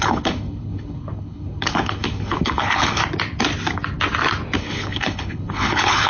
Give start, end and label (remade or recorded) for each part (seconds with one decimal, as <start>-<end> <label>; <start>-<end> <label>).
0.0-3.0 remade; 3.0-4.6 recorded; 4.6-6.1 remade